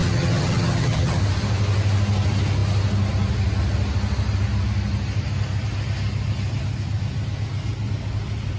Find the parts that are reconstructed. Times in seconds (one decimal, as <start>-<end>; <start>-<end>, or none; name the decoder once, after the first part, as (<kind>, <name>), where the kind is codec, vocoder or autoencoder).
0.0-1.2 (vocoder, HiFi-GAN)